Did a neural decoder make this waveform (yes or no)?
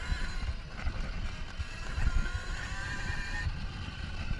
no